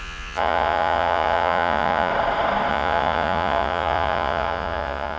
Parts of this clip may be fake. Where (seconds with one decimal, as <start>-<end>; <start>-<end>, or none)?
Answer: 0.0-2.1; 2.7-5.2